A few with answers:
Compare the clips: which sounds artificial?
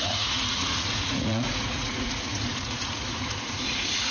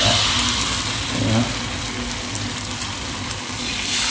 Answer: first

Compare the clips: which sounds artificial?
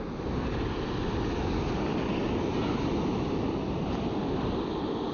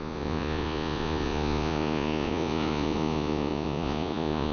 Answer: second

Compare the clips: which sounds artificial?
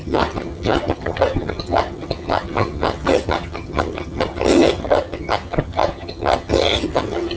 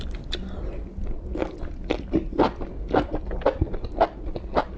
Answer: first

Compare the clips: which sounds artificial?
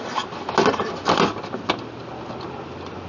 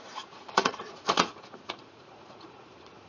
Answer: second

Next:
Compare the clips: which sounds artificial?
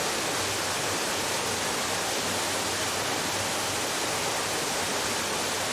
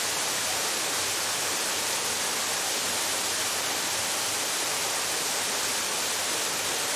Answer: second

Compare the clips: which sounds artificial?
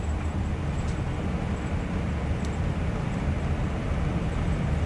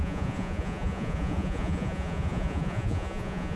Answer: second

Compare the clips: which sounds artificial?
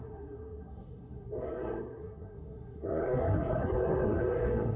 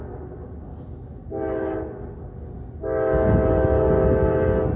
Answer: first